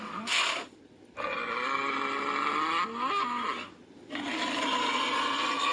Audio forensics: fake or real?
real